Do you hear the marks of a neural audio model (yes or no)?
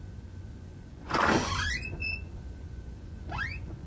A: yes